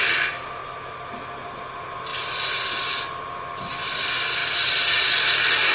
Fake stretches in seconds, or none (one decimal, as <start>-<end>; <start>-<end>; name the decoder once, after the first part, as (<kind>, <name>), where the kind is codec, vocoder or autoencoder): none

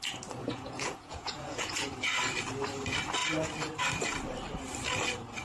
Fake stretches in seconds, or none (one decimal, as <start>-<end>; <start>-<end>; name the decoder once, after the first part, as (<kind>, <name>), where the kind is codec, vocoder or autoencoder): 0.4-1.9 (vocoder, Vocos)

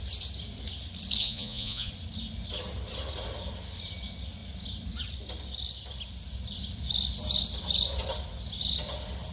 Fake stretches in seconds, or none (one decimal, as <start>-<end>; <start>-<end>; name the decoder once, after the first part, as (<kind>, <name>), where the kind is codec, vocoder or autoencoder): 1.2-1.9 (vocoder, Vocos)

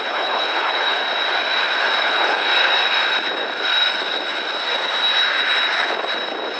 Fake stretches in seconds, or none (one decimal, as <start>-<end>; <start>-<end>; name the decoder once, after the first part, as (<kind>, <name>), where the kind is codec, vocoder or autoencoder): 0.0-1.0 (codec, HILCodec); 2.0-2.5